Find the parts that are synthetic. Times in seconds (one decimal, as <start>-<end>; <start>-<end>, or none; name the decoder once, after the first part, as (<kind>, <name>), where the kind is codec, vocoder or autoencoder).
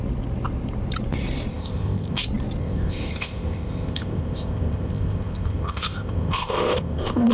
1.5-2.2 (codec, ZipCodec); 2.6-7.3